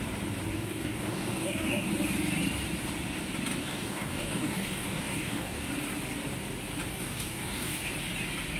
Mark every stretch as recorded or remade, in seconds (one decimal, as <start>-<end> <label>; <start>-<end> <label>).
0.0-0.5 recorded; 0.5-1.9 remade; 1.9-3.6 recorded; 3.6-5.7 remade; 5.7-6.9 recorded; 6.9-7.9 remade; 7.9-8.6 recorded